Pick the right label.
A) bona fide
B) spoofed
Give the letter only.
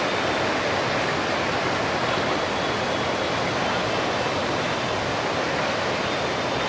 A